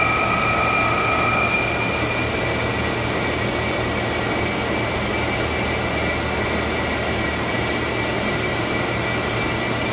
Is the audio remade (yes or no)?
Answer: no